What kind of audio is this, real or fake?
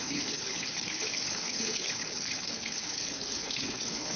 fake